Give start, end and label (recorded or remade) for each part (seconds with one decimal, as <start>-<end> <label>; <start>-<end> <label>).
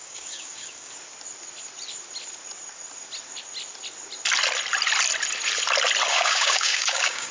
0.0-0.9 remade; 0.9-6.1 recorded; 6.1-7.3 remade